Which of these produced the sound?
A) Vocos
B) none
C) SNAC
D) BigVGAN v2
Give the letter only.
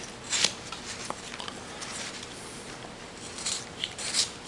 D